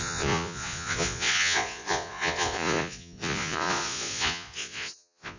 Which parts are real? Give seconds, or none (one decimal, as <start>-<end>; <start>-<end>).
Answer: none